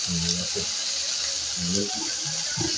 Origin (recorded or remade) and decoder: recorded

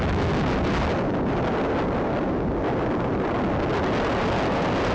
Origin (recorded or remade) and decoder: recorded